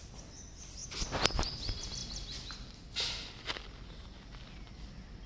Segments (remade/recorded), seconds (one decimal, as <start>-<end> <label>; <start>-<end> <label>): 0.0-5.3 recorded